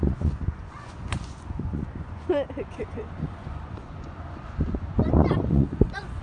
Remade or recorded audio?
remade